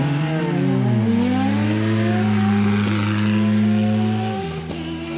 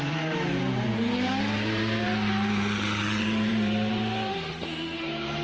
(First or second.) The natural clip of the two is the first